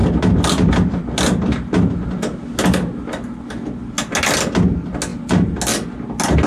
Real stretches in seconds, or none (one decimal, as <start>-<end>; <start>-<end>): 0.0-6.5